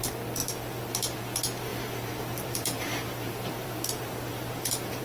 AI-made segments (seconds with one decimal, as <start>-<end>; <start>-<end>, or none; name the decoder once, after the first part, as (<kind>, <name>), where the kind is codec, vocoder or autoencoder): 0.4-0.9 (vocoder, BigVGAN v2); 1.7-5.0